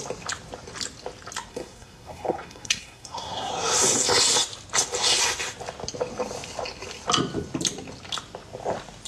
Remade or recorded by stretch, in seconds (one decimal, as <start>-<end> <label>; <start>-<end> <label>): 0.0-1.5 recorded; 1.5-3.5 remade; 3.5-9.1 recorded